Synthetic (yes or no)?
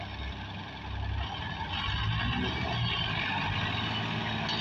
no